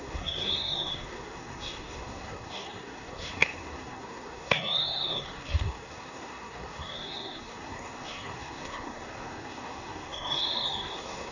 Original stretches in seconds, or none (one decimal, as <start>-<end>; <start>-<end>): none